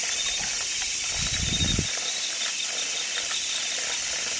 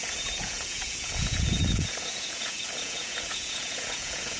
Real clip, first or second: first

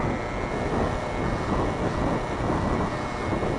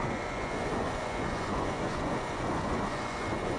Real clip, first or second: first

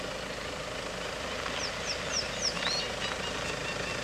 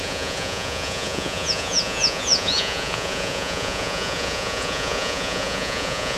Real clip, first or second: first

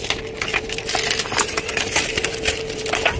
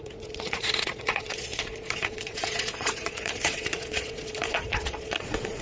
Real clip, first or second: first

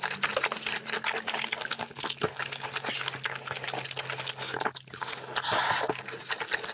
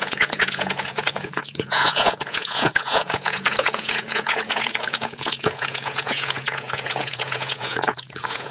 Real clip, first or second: first